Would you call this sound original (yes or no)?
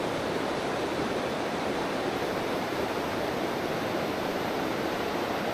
no